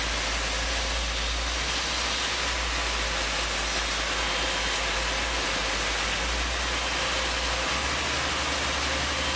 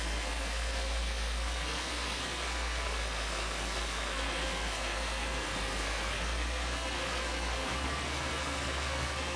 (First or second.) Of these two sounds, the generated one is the second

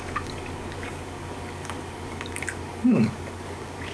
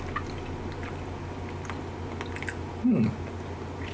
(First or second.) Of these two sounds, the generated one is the first